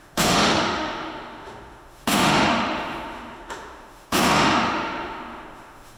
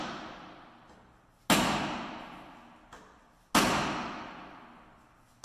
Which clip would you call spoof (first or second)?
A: first